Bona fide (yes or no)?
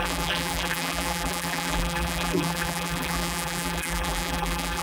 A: no